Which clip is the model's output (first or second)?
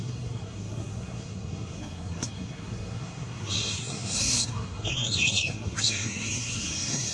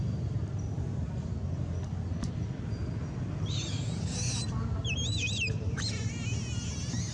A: first